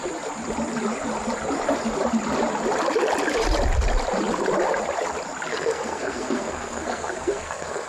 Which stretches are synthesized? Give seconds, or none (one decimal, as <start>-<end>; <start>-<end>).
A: 5.5-7.9